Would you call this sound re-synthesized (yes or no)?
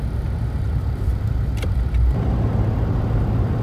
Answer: yes